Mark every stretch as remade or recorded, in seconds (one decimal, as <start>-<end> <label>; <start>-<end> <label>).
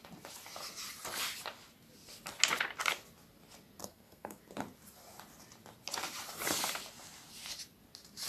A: 0.0-3.8 recorded; 3.8-4.4 remade; 4.4-8.3 recorded